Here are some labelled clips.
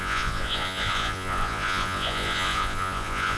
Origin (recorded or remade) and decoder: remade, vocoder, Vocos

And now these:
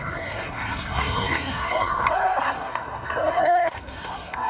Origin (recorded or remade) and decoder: remade, codec, SNAC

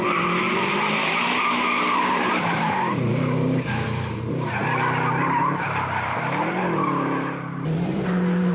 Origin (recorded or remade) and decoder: remade, vocoder, BigVGAN v2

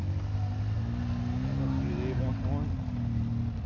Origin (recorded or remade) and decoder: recorded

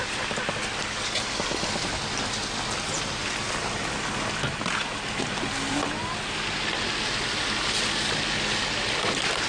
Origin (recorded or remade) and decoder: recorded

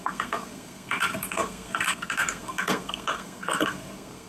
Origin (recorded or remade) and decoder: remade, codec, SNAC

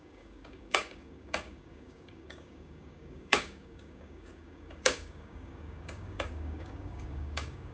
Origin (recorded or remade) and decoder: remade, codec, DAC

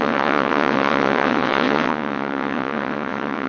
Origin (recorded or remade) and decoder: remade, vocoder, WaveNeXt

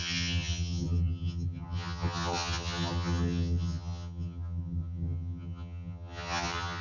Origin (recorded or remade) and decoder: remade, vocoder, HiFi-GAN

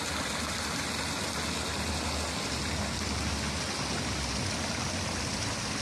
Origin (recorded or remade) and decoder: recorded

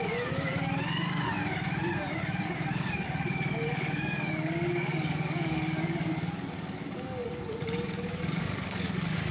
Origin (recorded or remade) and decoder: remade, codec, DAC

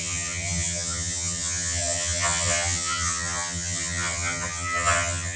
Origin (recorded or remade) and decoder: remade, vocoder, HiFi-GAN